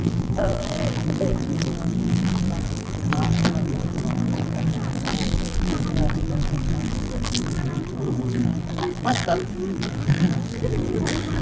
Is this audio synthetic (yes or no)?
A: yes